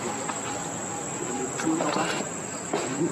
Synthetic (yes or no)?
no